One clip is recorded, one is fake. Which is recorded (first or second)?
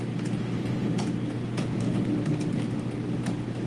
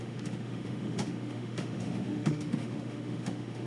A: first